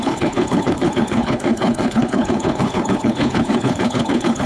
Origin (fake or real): fake